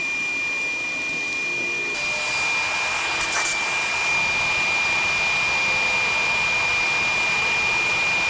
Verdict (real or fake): real